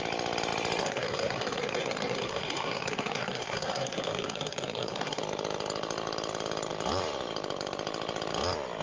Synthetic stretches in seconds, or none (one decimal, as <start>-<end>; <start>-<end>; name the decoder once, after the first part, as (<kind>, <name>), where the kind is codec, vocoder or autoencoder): 0.8-5.2 (codec, SNAC)